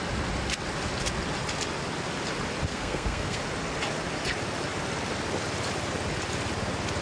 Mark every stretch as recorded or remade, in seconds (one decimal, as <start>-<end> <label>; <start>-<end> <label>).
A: 0.0-2.7 recorded; 2.7-3.4 remade; 3.4-7.0 recorded